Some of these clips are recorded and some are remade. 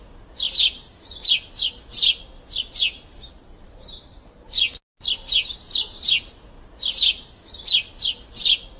recorded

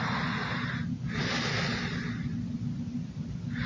recorded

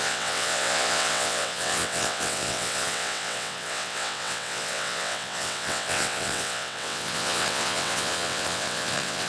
remade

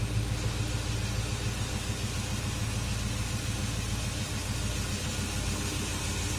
recorded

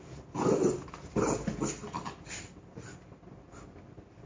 recorded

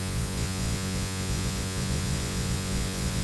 remade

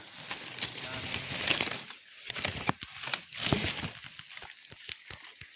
recorded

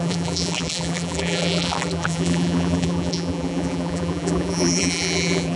remade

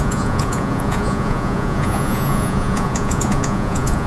remade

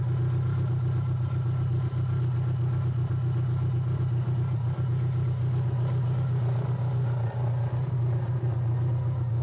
recorded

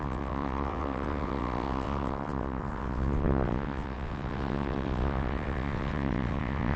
remade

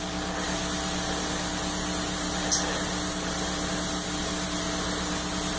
recorded